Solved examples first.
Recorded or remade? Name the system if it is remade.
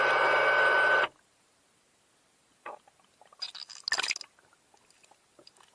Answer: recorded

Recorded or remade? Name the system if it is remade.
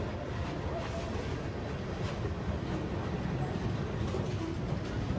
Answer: recorded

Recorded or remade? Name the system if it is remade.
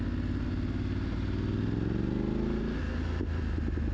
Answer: recorded